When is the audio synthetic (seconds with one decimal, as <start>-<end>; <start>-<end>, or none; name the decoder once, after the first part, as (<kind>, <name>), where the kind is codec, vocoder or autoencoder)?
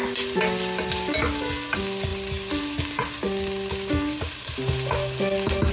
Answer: none